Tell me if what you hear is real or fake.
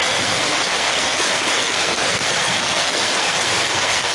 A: fake